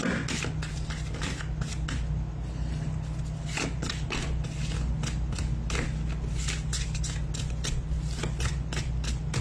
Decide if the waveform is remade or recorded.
recorded